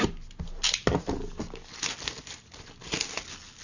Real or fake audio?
real